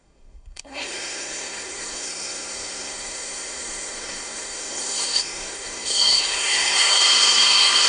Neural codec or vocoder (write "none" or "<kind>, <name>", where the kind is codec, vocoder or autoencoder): codec, SNAC